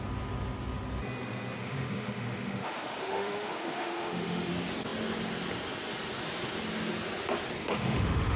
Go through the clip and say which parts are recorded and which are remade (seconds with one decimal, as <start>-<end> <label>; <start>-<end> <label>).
0.0-1.6 recorded; 1.6-4.5 remade; 4.5-7.6 recorded; 7.6-8.4 remade